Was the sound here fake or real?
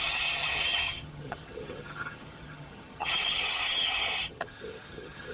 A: fake